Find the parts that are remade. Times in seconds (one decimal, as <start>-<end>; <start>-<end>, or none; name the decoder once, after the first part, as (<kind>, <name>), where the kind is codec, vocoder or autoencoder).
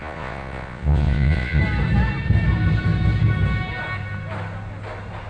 0.0-1.6 (vocoder, Vocos)